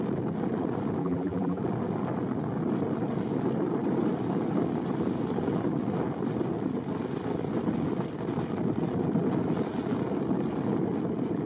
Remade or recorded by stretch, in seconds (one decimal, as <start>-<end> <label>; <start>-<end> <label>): 0.0-1.0 recorded; 1.0-1.6 remade; 1.6-11.5 recorded